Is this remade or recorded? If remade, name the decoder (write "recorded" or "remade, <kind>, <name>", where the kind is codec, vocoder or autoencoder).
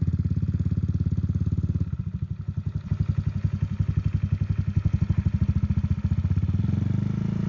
recorded